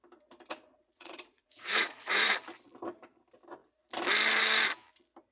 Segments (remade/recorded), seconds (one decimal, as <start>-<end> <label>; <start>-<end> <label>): 0.0-0.7 recorded; 0.7-2.3 remade; 2.3-5.3 recorded